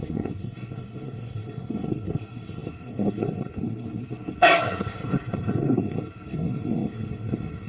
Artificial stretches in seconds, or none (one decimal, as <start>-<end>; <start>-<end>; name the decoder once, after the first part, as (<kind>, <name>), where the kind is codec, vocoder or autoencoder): 0.0-7.7 (codec, SNAC)